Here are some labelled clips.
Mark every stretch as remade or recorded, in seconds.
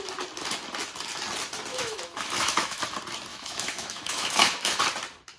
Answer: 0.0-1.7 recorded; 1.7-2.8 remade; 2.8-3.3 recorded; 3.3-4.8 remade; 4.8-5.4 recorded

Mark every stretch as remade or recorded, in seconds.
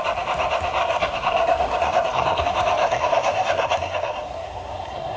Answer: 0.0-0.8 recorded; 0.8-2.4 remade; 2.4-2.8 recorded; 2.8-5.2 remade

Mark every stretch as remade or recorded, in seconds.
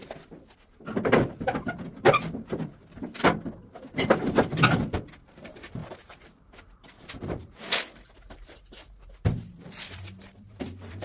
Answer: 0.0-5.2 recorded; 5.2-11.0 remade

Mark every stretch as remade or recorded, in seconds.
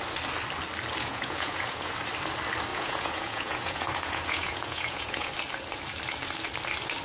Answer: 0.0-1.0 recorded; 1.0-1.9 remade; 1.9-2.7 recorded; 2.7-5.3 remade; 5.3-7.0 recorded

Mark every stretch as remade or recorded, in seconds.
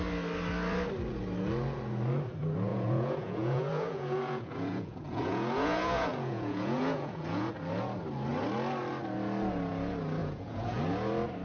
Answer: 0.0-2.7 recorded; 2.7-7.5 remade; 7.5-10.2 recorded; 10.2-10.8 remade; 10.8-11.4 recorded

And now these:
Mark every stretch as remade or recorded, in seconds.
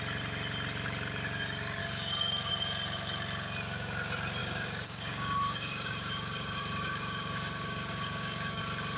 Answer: 0.0-1.8 recorded; 1.8-2.5 remade; 2.5-4.4 recorded; 4.4-8.6 remade; 8.6-9.0 recorded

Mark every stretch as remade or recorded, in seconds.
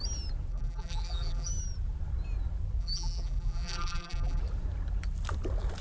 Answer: 0.0-0.5 recorded; 0.5-1.5 remade; 1.5-2.8 recorded; 2.8-4.4 remade; 4.4-5.8 recorded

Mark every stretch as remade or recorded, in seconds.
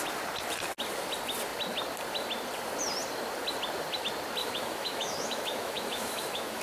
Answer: 0.0-4.4 recorded; 4.4-6.6 remade